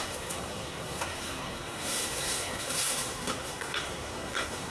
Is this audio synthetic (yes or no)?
yes